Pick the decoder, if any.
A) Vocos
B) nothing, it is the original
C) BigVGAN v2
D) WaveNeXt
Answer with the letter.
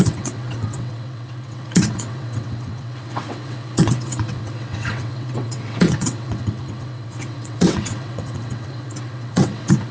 D